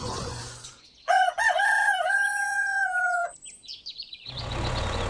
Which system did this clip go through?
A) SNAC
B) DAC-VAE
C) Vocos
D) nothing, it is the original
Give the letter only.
C